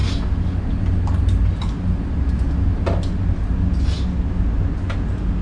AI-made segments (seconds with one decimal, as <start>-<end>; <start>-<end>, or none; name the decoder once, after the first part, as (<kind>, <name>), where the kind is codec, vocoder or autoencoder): none